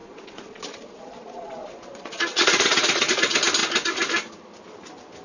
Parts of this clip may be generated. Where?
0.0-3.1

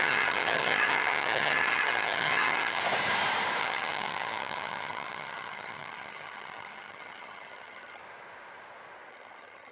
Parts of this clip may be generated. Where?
0.0-2.8; 3.6-8.0; 9.1-9.7

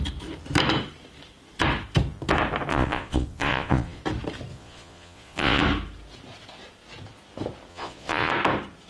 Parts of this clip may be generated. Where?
2.7-4.0; 4.5-5.6; 7.7-8.3

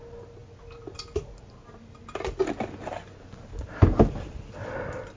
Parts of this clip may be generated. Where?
none

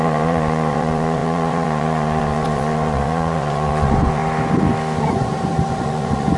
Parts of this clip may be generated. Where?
0.0-4.2; 5.0-6.4